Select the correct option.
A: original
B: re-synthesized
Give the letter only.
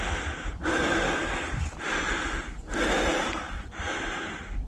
A